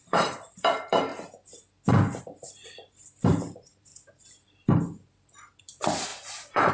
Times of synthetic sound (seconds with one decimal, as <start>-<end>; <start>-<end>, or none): 0.0-1.1; 2.2-3.9; 5.6-6.7